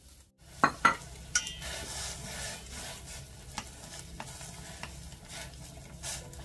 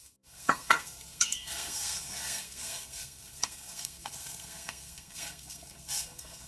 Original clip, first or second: first